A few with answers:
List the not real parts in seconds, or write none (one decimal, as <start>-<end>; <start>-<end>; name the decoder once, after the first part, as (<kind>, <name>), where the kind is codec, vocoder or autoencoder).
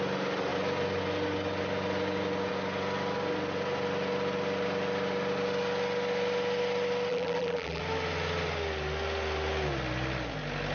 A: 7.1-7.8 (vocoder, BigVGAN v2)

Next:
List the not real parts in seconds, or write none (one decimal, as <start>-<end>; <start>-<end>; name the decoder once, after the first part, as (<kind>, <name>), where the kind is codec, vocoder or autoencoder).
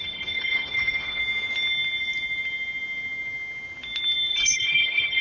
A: 0.0-1.2 (codec, HILCodec); 4.3-5.2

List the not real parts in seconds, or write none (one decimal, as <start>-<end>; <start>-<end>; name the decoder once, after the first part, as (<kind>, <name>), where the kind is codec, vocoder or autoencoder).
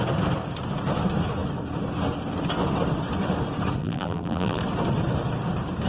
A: 3.8-4.6 (vocoder, BigVGAN v2)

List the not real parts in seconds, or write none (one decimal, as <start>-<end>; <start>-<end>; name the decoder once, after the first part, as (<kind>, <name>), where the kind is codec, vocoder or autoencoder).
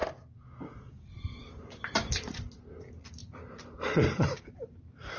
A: 1.4-2.4 (vocoder, BigVGAN v2); 3.2-5.2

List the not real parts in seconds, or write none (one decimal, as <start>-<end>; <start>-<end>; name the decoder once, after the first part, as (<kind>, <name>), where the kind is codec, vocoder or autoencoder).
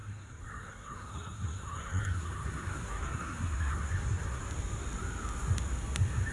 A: 0.0-4.4 (codec, SNAC)